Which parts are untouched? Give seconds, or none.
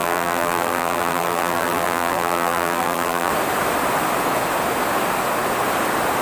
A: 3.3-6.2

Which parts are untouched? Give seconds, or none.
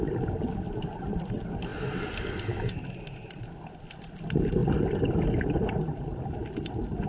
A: 0.0-7.1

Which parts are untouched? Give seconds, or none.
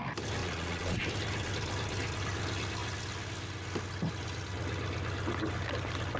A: 0.0-0.4; 1.0-6.2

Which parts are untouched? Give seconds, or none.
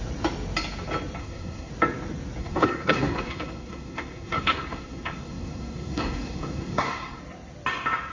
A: 0.0-1.2; 1.7-2.4; 7.2-8.1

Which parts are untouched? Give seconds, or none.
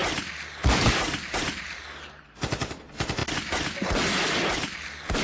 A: 0.0-5.2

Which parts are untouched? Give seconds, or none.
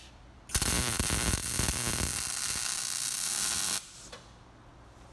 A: 0.0-5.1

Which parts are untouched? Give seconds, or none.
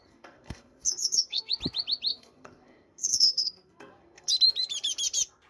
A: 1.5-2.1; 4.3-5.5